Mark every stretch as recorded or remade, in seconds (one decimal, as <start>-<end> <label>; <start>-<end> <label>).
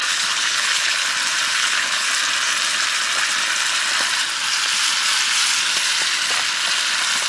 0.0-1.1 remade; 1.1-1.5 recorded; 1.5-2.1 remade; 2.1-7.3 recorded